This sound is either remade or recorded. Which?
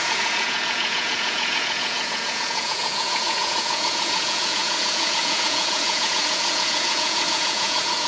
remade